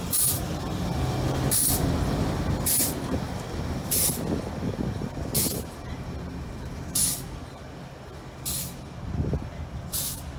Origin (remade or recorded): recorded